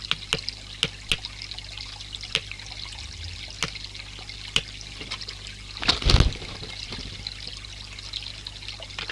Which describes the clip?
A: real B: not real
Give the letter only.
A